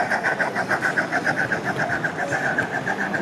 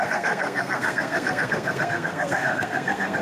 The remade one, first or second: second